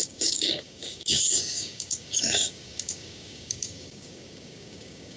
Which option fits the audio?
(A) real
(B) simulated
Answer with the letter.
B